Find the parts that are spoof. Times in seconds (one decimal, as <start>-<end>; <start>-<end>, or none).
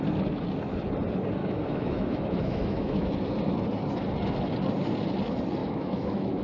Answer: 1.4-3.1; 5.6-6.4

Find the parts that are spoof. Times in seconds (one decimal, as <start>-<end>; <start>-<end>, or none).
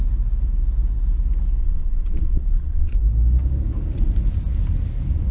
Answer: 1.6-3.0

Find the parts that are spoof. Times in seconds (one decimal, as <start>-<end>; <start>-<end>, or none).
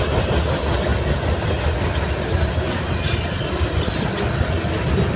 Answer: none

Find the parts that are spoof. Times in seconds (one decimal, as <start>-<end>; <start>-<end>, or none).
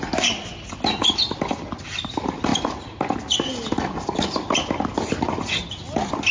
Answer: none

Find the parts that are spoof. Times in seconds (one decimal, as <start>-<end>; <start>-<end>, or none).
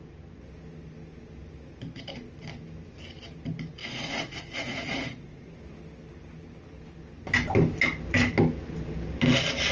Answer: 3.8-5.6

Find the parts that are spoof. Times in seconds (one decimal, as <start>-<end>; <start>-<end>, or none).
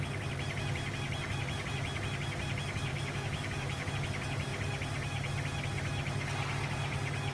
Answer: 2.9-3.9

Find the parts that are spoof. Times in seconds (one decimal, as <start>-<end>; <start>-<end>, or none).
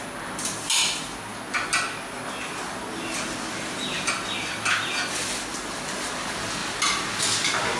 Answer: none